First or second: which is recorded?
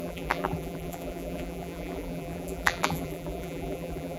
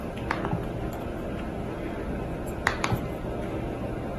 second